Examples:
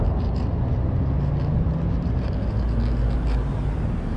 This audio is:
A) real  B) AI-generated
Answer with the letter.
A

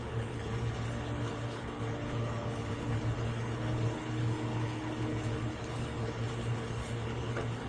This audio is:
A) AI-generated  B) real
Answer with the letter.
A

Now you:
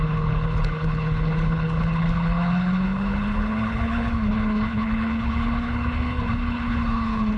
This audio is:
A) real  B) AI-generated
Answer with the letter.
B